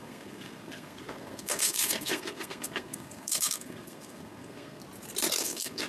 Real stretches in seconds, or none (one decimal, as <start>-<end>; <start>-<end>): 4.8-5.4